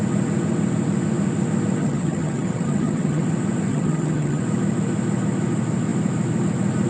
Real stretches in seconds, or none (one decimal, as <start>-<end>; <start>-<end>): 0.0-1.8; 3.2-3.7; 4.4-6.9